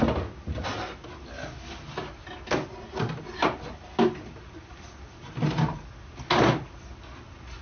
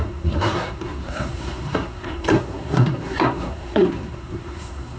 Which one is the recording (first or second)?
first